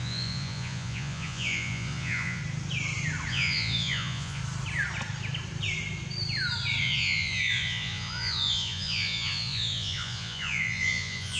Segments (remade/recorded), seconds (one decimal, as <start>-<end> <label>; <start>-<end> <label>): 0.0-2.4 remade; 2.4-3.3 recorded; 3.3-4.4 remade; 4.4-6.8 recorded; 6.8-11.4 remade